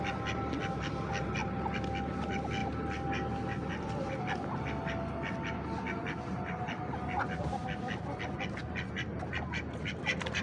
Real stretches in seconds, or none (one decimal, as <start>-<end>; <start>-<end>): 0.0-10.4